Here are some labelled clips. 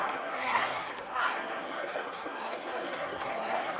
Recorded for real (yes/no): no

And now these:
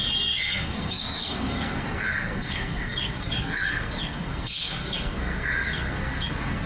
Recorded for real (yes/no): no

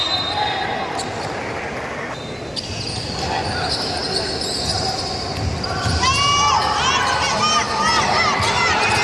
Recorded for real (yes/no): yes